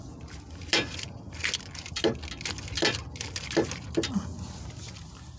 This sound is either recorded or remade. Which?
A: recorded